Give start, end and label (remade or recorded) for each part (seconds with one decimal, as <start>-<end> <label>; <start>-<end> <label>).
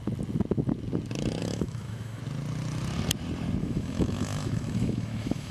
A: 0.0-1.4 recorded; 1.4-2.2 remade; 2.2-3.6 recorded; 3.6-5.5 remade